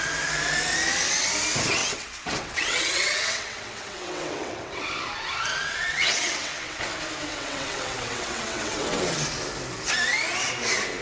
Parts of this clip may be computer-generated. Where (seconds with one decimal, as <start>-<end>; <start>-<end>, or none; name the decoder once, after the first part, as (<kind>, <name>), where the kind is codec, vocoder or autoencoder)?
1.8-4.9 (vocoder, WaveNeXt); 5.5-6.8; 7.3-9.0

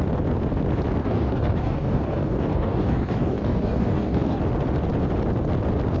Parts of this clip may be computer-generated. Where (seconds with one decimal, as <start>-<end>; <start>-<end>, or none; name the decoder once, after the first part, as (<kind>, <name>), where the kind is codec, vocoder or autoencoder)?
1.0-4.4 (codec, DAC)